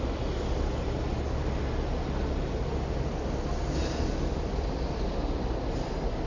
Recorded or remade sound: recorded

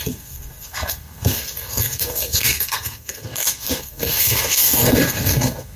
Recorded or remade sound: remade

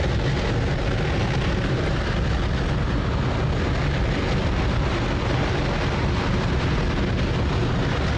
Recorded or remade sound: recorded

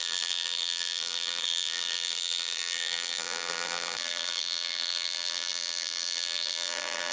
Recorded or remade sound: remade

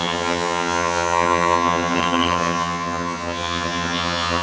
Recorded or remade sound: remade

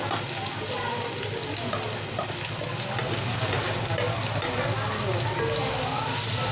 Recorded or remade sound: recorded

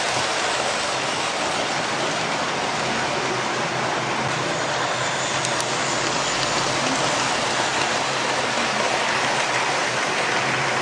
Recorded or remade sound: recorded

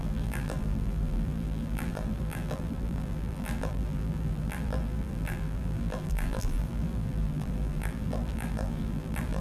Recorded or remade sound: remade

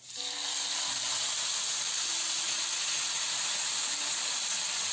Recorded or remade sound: recorded